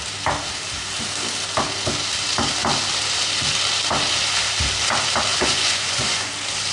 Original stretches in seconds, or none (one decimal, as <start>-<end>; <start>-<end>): 0.0-5.3; 6.3-6.7